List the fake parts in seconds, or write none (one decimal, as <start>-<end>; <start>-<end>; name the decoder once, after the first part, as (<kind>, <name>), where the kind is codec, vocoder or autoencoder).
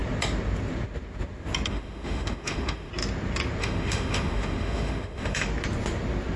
1.7-2.9 (autoencoder, DAC-VAE); 3.6-5.5